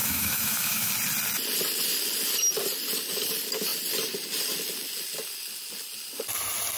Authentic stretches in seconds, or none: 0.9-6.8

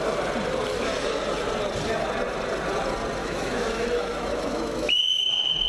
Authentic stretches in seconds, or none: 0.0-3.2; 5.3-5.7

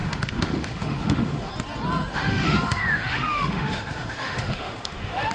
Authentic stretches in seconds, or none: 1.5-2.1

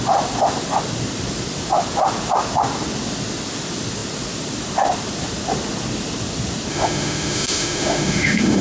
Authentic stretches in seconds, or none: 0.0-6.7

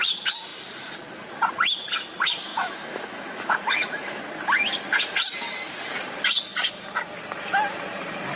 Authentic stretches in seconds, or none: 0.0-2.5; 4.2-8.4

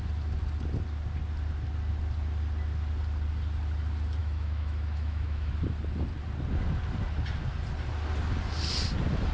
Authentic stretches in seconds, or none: 0.0-4.2; 5.5-9.3

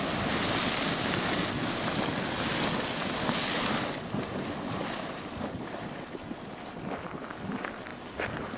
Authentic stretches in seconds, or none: 0.0-8.6

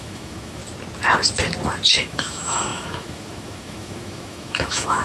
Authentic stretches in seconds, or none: 0.6-2.0